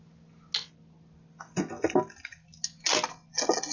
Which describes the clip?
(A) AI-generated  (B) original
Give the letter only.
B